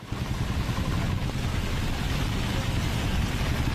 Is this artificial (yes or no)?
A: no